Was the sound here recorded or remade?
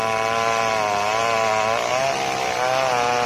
recorded